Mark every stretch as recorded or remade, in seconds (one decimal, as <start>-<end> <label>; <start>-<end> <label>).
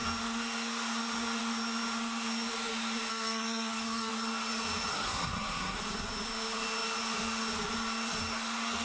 0.0-3.1 recorded; 3.1-4.1 remade; 4.1-4.9 recorded; 4.9-5.8 remade; 5.8-8.8 recorded